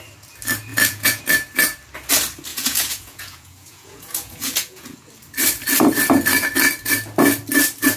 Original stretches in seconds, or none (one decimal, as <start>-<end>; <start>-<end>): 0.0-0.7; 1.2-2.5; 5.1-8.0